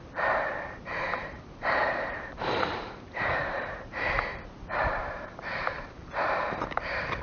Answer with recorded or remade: remade